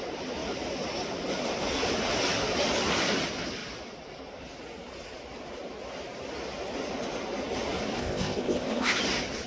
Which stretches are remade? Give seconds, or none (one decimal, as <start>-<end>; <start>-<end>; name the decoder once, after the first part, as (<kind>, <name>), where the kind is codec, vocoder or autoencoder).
8.0-9.0 (codec, ZipCodec)